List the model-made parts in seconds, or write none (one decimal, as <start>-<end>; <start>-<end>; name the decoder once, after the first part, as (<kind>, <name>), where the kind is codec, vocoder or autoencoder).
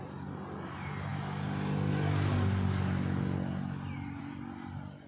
none